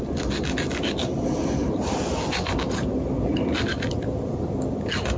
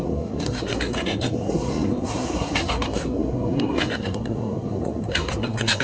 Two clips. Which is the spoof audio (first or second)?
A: second